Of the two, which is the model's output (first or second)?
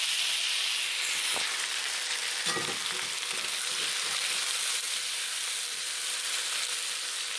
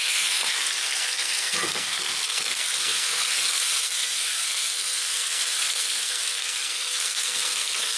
second